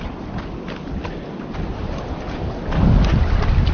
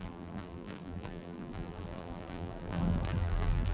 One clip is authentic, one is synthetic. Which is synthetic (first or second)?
second